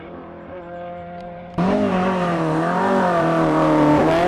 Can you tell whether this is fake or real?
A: fake